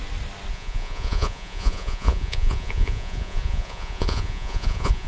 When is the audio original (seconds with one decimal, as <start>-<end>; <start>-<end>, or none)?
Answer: 0.0-0.5

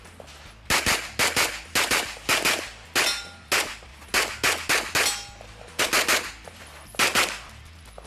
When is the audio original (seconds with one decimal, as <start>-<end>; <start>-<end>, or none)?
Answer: 0.0-8.1

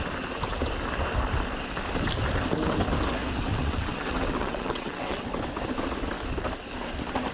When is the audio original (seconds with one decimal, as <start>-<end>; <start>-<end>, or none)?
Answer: 0.0-3.5; 5.3-7.3

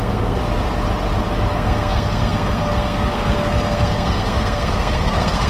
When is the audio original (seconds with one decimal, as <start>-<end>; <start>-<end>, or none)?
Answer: 0.4-1.5

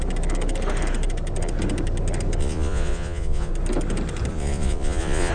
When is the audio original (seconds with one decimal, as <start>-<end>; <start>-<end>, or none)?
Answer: 0.0-2.4; 3.5-4.3

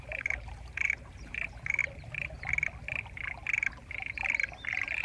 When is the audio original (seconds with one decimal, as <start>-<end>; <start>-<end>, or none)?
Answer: 1.8-5.0